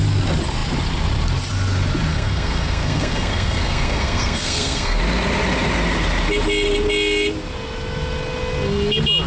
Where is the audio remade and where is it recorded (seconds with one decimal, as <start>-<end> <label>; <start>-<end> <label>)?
0.0-2.1 recorded; 2.1-5.0 remade; 5.0-9.3 recorded